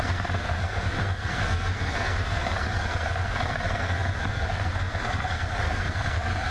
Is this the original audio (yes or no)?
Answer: no